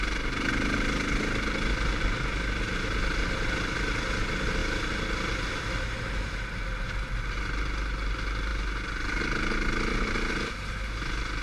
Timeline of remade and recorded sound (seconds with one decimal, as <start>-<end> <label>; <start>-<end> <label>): 0.0-11.4 recorded